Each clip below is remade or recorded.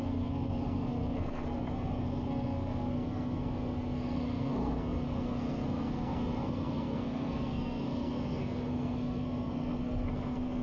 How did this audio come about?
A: remade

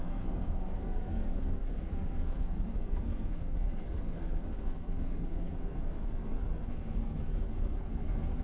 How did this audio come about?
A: remade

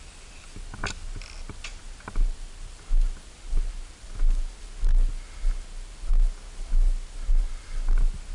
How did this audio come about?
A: recorded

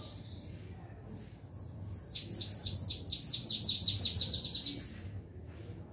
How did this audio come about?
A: recorded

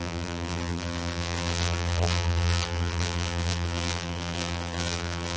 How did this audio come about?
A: remade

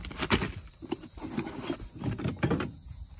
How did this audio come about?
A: recorded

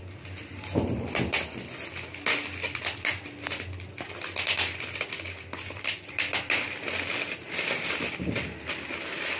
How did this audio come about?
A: recorded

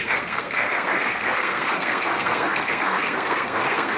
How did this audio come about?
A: remade